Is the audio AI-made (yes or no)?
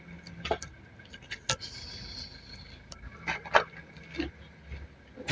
no